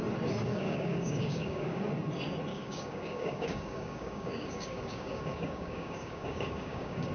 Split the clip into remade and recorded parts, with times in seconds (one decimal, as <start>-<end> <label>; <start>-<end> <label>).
0.0-0.5 recorded; 0.5-1.8 remade; 1.8-2.5 recorded; 2.5-7.1 remade